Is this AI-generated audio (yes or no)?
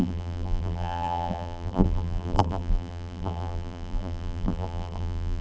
yes